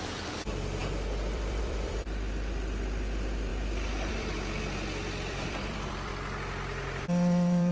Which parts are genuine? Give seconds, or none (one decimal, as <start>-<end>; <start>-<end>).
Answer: 3.5-4.1; 6.1-7.0

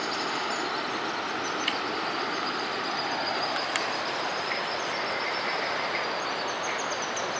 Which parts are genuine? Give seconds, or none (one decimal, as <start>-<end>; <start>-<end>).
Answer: 0.0-7.4